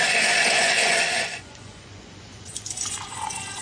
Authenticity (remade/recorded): remade